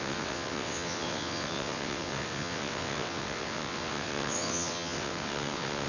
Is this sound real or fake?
fake